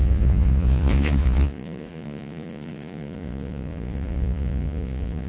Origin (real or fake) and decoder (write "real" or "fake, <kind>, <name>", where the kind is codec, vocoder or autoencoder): fake, vocoder, Vocos